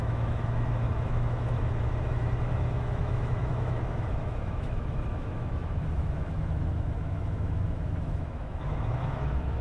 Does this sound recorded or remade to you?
remade